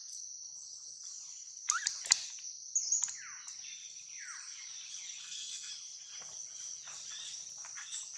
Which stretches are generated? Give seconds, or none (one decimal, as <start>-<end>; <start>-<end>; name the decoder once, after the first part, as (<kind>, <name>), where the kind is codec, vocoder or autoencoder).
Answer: 5.2-5.7 (codec, SNAC)